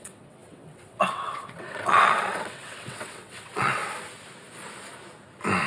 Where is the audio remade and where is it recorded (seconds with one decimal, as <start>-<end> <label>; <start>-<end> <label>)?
0.0-3.8 remade; 3.8-5.7 recorded